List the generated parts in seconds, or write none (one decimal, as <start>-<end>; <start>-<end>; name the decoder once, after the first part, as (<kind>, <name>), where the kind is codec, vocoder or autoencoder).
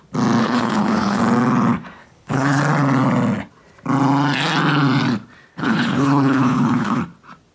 0.4-1.2 (codec, HILCodec); 2.0-2.6; 5.5-7.0